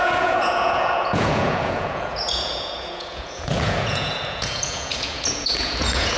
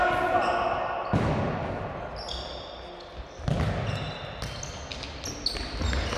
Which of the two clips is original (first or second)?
second